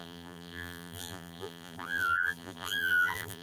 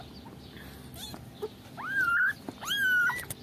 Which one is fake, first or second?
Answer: first